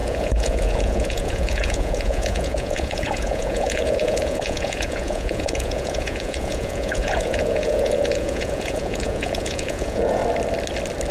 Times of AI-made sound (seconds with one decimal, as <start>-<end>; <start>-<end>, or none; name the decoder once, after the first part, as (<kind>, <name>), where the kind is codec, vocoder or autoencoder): 0.0-10.2 (vocoder, Vocos)